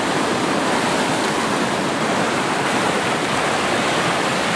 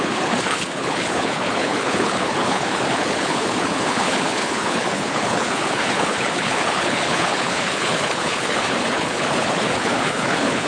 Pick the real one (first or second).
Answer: first